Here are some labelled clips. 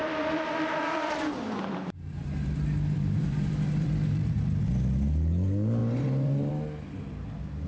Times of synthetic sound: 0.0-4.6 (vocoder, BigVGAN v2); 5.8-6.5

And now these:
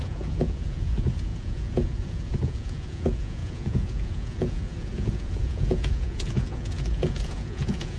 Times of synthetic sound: 0.0-8.0 (vocoder, Vocos)

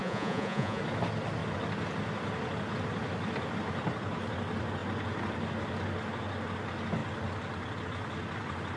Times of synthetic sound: 0.0-0.8 (vocoder, Vocos)